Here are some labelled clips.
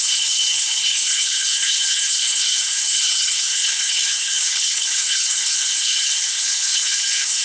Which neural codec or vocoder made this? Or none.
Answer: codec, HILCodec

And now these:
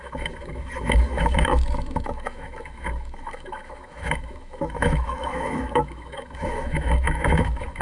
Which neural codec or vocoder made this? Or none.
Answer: autoencoder, DAC-VAE